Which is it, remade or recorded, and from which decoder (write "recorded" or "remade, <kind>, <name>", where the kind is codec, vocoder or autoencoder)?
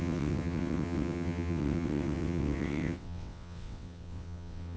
remade, vocoder, WaveNeXt